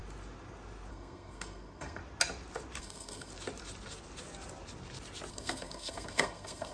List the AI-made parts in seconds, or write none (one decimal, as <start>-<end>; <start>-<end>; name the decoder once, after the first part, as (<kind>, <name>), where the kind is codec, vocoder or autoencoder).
0.9-2.0 (codec, SNAC); 2.8-3.3; 5.3-6.7